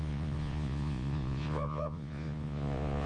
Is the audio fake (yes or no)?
yes